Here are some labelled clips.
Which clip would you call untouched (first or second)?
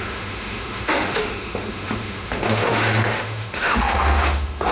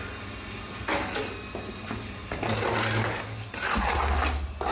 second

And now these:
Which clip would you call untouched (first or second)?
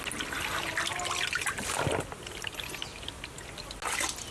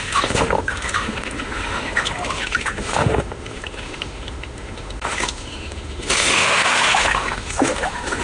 first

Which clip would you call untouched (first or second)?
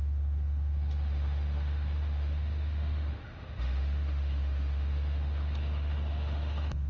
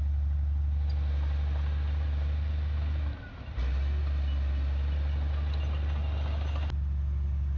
second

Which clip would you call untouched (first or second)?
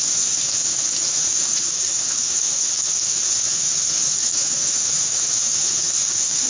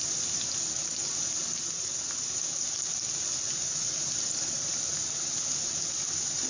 second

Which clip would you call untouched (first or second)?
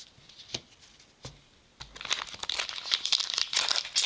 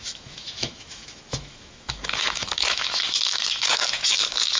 first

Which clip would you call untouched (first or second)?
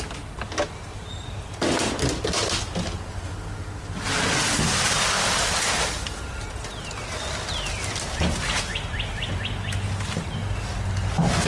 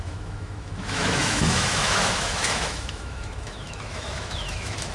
first